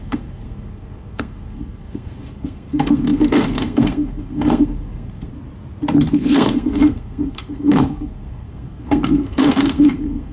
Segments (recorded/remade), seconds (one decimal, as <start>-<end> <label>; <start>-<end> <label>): 0.0-5.3 remade; 5.3-6.1 recorded; 6.1-10.3 remade

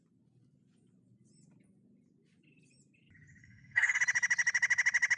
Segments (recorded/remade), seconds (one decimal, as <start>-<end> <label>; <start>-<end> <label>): 0.0-3.4 recorded; 3.4-4.0 remade; 4.0-5.2 recorded

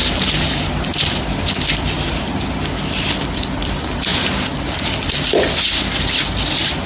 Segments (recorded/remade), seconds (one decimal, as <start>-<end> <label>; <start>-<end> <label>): 0.0-6.9 recorded

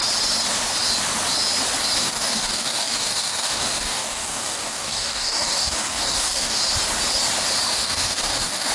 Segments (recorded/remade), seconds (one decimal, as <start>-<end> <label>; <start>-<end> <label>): 0.0-2.0 recorded; 2.0-6.6 remade; 6.6-7.7 recorded; 7.7-8.7 remade